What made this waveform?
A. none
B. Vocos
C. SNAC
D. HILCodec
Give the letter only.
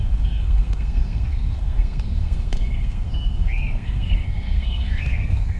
C